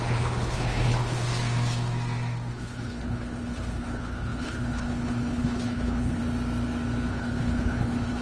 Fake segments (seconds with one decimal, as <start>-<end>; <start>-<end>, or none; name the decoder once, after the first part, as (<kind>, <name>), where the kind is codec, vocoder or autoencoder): 0.0-1.3 (codec, HILCodec); 2.5-6.2; 7.1-8.2